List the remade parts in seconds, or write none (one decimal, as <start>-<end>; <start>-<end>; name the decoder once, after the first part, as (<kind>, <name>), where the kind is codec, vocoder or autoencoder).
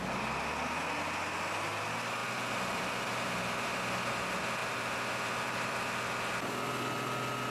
2.2-3.4 (vocoder, BigVGAN v2); 4.6-6.2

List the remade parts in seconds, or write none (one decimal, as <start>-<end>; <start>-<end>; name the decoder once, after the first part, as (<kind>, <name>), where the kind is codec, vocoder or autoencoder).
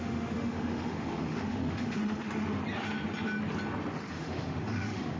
0.0-2.6 (autoencoder, DAC-VAE); 4.1-5.2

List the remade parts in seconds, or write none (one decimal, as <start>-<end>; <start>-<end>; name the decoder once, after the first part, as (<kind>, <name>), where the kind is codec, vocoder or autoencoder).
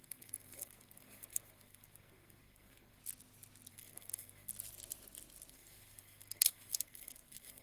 0.0-3.0 (codec, SNAC); 3.7-4.5; 5.5-7.6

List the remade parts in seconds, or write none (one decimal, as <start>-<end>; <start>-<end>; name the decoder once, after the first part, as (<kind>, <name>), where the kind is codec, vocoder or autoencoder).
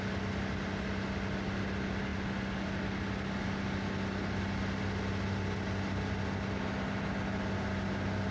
none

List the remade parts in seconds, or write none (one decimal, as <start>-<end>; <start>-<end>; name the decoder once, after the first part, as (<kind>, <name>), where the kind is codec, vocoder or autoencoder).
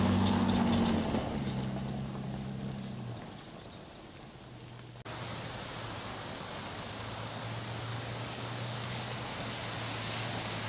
6.1-7.4 (codec, DAC); 7.9-8.9